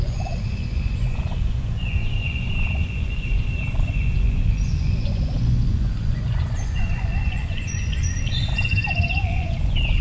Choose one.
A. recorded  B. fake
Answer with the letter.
B